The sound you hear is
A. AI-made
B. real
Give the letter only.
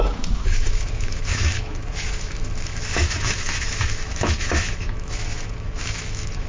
A